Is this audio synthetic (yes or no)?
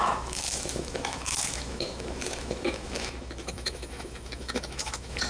yes